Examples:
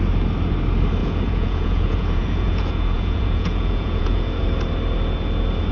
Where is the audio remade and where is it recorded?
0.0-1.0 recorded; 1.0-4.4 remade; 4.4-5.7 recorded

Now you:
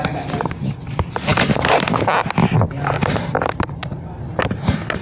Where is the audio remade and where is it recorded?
0.0-5.0 recorded

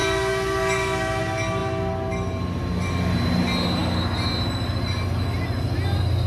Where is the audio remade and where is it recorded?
0.0-6.3 recorded

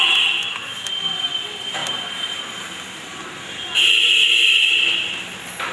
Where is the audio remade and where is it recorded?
0.0-5.7 recorded

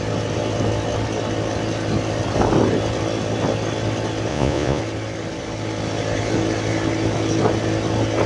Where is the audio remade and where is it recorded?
0.0-4.3 recorded; 4.3-4.8 remade; 4.8-8.3 recorded